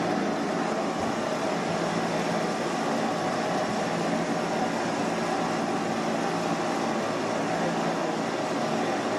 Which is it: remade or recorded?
recorded